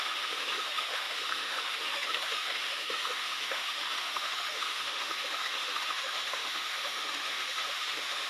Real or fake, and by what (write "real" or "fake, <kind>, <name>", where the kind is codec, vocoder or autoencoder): fake, autoencoder, DAC-VAE